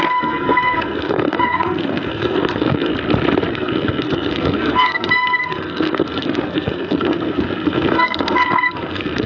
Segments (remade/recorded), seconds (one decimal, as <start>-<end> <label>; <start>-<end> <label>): 0.0-2.9 remade; 2.9-3.5 recorded; 3.5-9.3 remade